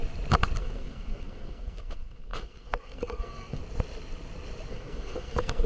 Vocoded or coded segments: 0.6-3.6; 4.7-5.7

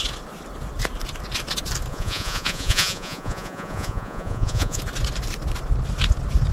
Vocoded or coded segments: 1.9-4.8